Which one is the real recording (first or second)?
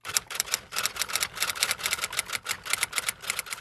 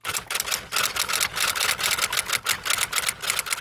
second